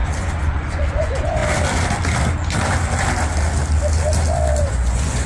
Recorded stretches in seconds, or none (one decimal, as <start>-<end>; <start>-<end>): 1.4-4.6